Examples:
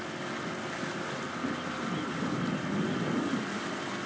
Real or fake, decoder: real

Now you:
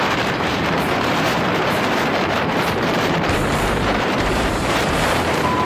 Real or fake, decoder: fake, vocoder, BigVGAN v2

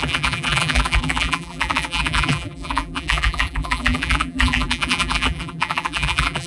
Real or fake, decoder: fake, vocoder, BigVGAN v2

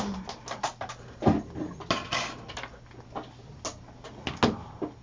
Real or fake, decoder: real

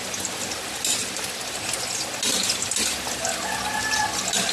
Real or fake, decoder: real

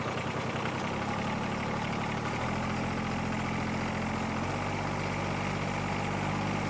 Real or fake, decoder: real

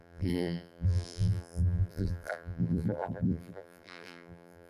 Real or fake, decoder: fake, vocoder, BigVGAN v2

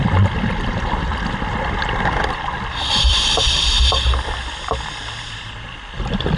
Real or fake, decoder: fake, vocoder, BigVGAN v2